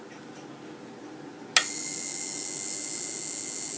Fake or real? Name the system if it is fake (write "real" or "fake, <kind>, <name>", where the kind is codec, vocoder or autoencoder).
real